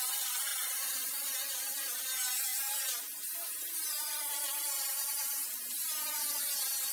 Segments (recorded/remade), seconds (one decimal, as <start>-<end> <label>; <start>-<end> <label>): 0.0-0.5 recorded; 0.5-2.0 remade; 2.0-2.5 recorded; 2.5-6.3 remade; 6.3-6.9 recorded